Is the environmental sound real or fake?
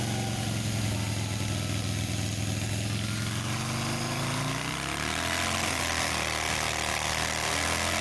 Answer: real